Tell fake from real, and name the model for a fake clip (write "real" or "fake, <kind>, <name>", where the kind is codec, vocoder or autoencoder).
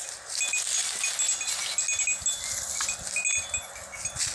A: real